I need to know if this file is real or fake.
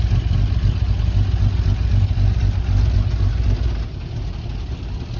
real